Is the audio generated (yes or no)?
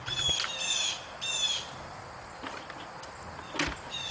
no